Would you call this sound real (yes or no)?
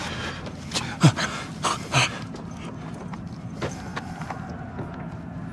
yes